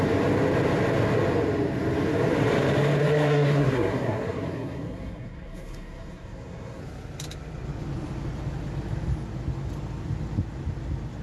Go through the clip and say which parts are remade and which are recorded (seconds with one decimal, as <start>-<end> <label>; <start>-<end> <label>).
0.0-3.0 recorded; 3.0-6.8 remade; 6.8-11.2 recorded